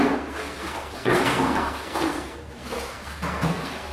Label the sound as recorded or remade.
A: remade